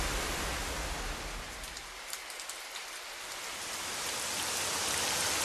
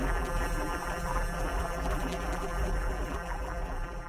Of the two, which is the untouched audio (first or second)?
first